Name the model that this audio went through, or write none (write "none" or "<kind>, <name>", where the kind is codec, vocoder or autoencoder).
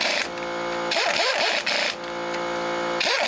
none